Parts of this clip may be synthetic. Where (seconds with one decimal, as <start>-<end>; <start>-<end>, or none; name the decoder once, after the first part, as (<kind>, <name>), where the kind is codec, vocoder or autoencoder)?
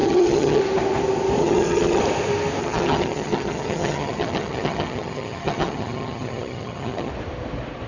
0.0-0.6 (vocoder, HiFi-GAN); 1.4-2.0; 2.6-7.1